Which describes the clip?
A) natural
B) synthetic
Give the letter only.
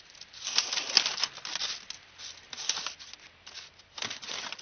A